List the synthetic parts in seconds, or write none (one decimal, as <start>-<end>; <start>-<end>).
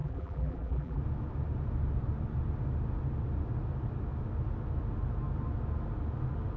0.0-1.0